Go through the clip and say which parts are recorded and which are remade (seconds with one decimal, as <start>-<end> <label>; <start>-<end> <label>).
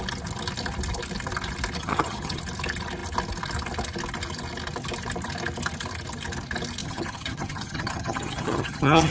0.0-1.8 recorded; 1.8-2.4 remade; 2.4-6.8 recorded; 6.8-9.1 remade